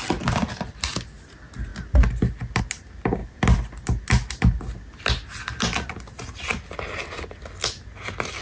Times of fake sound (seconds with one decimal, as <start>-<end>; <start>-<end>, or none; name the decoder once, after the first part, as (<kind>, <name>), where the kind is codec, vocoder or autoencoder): none